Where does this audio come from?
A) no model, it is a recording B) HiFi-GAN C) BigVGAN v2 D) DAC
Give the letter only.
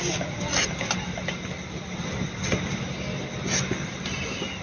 A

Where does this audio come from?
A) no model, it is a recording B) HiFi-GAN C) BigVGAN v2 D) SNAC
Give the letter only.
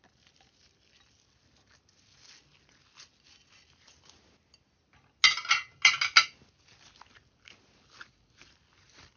A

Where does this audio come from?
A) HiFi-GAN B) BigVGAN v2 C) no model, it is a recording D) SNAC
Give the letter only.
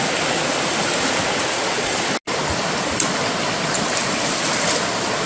C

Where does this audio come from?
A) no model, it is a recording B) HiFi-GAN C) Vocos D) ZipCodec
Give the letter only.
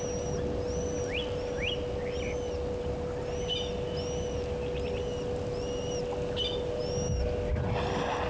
A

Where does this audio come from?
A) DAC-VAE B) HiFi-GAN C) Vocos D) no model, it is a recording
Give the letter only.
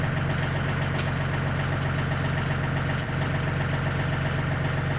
D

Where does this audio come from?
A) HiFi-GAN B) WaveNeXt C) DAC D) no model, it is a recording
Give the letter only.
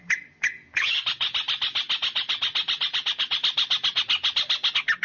D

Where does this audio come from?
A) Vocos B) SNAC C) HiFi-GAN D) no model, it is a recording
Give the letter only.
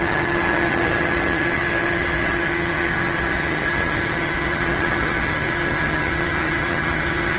C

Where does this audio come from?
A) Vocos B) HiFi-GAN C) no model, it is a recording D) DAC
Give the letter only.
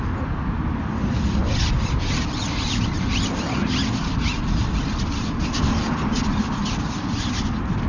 C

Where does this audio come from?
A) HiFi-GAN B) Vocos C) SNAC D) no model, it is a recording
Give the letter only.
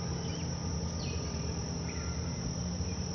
D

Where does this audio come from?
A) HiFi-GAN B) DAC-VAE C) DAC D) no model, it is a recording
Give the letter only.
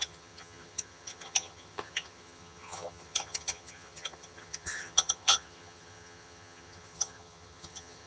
A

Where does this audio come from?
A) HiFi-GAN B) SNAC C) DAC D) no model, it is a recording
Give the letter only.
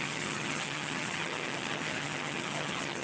A